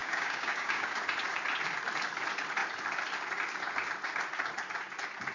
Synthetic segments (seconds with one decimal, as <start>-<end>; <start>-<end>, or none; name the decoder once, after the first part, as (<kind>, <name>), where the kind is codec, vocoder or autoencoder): 0.0-1.0 (codec, DAC)